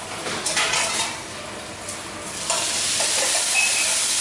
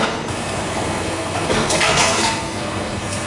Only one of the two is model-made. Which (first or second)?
second